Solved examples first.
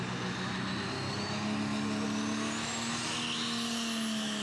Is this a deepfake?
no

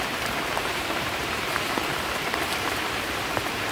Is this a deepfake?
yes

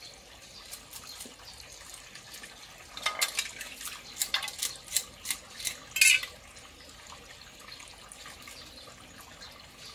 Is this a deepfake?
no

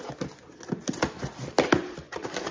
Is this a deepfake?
no